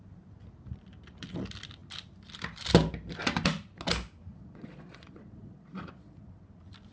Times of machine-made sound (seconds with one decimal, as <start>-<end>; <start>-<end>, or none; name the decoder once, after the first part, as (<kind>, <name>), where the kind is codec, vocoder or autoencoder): 4.3-6.4 (vocoder, Vocos)